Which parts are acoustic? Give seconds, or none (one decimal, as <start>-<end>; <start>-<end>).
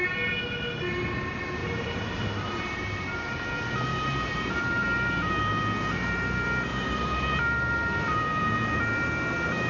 0.0-1.6; 3.1-3.9; 5.3-6.7; 7.4-9.7